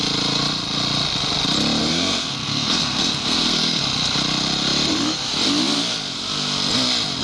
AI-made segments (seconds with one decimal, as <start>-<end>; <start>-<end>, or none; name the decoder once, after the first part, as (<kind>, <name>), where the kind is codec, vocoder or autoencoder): 1.8-3.8 (codec, SNAC)